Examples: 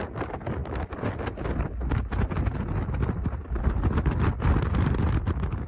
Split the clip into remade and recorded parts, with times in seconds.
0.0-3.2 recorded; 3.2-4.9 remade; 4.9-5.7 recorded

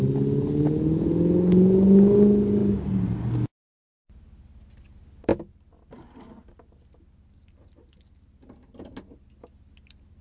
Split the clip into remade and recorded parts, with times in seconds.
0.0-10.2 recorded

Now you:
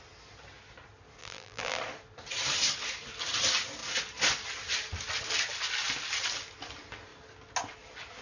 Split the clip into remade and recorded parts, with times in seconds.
0.0-1.2 recorded; 1.2-1.8 remade; 1.8-8.2 recorded